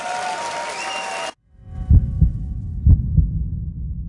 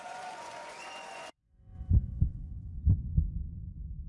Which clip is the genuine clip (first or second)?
first